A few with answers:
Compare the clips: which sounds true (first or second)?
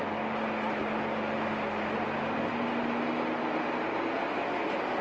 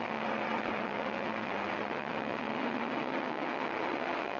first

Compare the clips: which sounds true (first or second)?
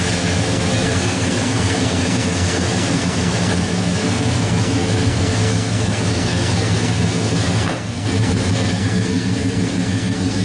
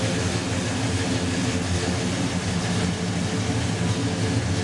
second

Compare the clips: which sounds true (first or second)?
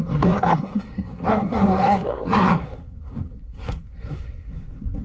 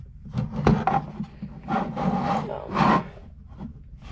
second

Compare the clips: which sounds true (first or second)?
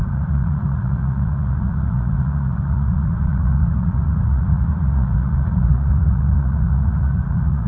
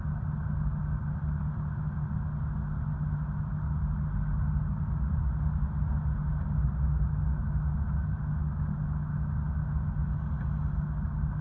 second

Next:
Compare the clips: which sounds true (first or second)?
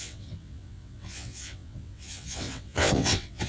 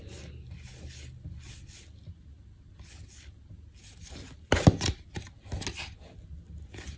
second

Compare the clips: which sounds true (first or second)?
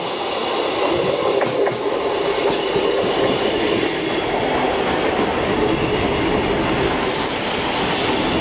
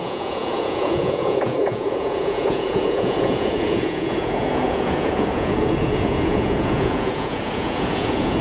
first